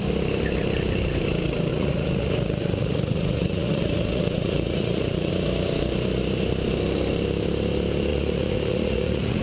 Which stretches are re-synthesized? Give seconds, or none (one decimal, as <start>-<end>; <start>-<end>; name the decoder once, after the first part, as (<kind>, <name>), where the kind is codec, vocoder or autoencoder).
1.7-5.3 (vocoder, Vocos); 8.1-9.4